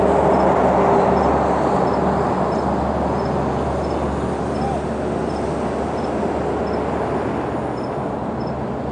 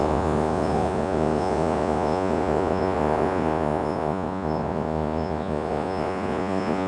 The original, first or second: first